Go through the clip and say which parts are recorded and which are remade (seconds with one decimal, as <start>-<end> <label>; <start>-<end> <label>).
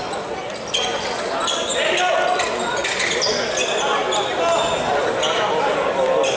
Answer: 0.0-6.4 recorded